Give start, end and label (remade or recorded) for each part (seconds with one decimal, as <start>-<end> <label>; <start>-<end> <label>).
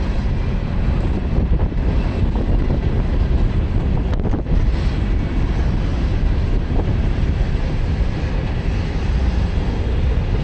0.0-5.9 recorded; 5.9-8.2 remade; 8.2-10.4 recorded